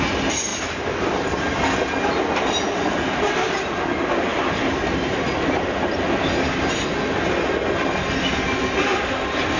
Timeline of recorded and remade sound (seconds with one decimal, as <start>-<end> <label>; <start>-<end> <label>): 0.0-9.6 recorded